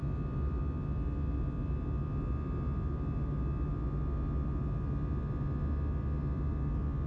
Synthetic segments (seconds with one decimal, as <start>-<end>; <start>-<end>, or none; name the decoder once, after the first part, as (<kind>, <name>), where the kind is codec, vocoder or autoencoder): none